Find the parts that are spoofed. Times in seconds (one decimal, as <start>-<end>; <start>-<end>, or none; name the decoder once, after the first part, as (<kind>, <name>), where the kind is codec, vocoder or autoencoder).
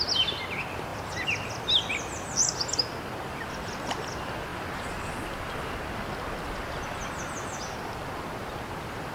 none